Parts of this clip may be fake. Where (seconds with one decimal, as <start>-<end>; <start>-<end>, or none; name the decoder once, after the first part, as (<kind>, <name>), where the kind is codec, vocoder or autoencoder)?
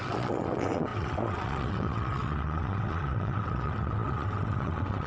0.0-5.1 (vocoder, WaveNeXt)